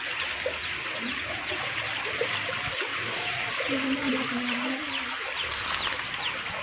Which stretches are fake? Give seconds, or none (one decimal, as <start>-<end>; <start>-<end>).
0.6-1.8; 2.9-3.5